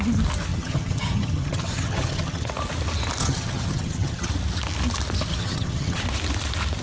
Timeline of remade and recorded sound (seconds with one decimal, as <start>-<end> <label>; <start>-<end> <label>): 0.0-0.5 recorded; 0.5-2.5 remade; 2.5-3.2 recorded; 3.2-4.3 remade; 4.3-5.3 recorded; 5.3-6.0 remade; 6.0-6.8 recorded